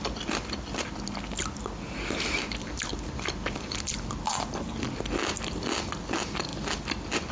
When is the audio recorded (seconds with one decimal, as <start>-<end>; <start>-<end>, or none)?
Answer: 0.0-7.3